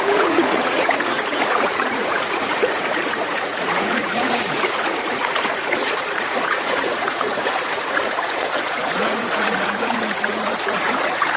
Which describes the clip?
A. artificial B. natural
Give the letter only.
A